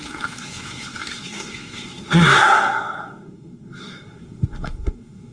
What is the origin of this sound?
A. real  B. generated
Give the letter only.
B